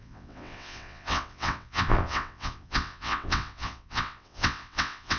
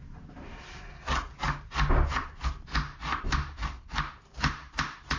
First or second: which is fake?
first